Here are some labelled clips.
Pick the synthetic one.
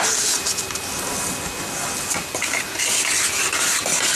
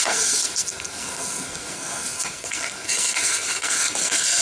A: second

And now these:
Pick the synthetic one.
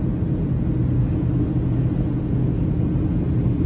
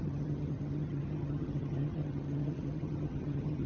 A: second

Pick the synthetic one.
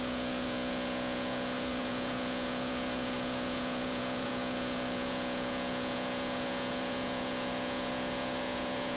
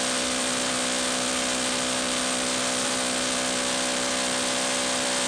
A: first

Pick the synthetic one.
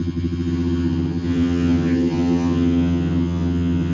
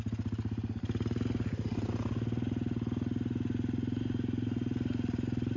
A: first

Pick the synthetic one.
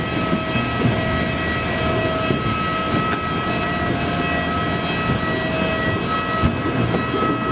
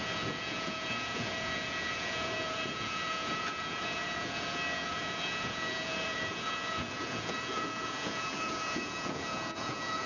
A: second